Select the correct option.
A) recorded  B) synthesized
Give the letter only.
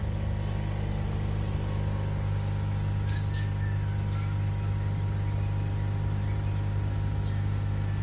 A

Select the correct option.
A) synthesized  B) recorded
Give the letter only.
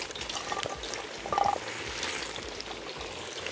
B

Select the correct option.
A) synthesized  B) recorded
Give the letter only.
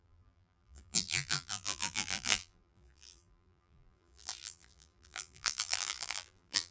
A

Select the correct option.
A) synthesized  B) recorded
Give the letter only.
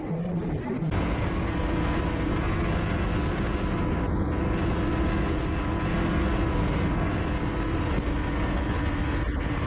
B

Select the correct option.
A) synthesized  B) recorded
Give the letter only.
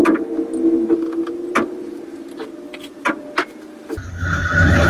B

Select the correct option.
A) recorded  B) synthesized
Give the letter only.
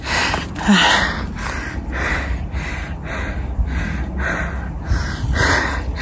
A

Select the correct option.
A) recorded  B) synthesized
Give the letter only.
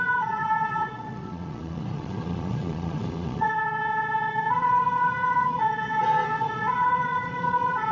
B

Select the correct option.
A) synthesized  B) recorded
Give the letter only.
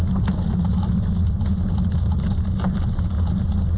B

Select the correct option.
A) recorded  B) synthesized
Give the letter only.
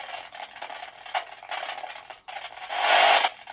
A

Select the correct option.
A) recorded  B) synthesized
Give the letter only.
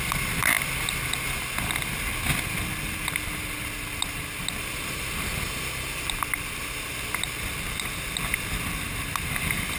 A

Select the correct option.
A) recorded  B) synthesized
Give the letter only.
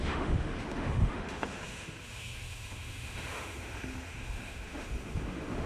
B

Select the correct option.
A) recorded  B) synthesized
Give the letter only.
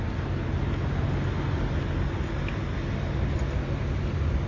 A